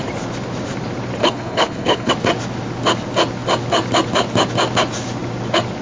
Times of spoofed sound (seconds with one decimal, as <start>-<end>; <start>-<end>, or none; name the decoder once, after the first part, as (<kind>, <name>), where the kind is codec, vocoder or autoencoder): 1.2-2.1 (codec, HILCodec)